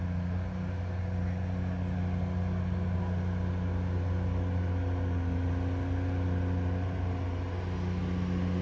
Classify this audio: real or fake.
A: real